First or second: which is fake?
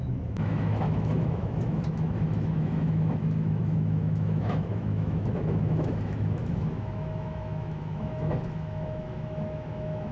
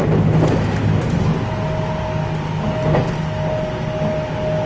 first